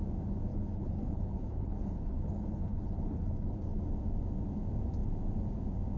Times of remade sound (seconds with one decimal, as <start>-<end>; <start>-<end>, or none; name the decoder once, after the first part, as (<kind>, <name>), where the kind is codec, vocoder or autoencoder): 0.5-3.8 (codec, HILCodec)